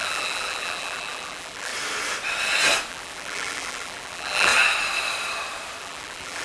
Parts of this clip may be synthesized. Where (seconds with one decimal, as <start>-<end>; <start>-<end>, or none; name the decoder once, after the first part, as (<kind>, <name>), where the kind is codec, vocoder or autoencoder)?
0.0-1.7 (vocoder, BigVGAN v2); 2.9-4.5; 5.8-6.4